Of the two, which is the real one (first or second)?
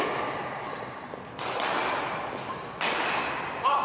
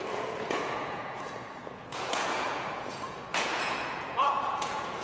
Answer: first